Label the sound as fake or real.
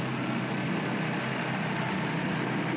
real